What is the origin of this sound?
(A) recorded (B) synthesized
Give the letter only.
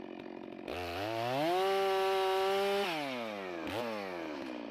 A